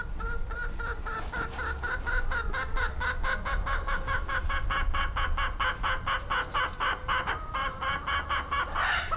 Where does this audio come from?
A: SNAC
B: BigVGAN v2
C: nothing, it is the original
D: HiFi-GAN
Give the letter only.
C